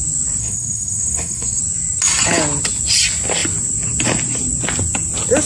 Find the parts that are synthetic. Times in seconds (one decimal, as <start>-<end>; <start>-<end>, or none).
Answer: 0.4-1.6